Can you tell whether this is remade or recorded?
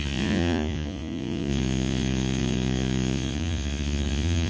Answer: remade